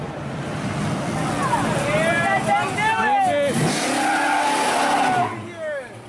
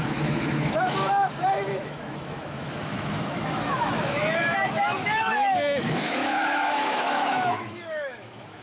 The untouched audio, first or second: first